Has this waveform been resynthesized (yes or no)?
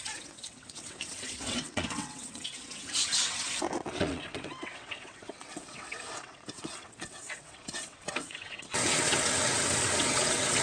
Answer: yes